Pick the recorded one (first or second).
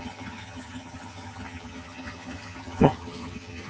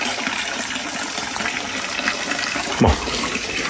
second